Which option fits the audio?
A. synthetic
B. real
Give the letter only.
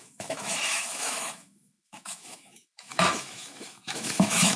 A